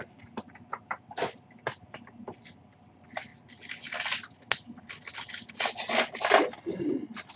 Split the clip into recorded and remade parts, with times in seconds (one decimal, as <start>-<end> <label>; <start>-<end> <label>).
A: 0.0-7.4 recorded